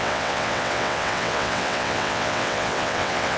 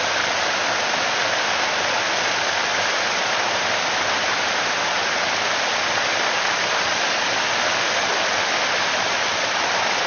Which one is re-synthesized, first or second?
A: first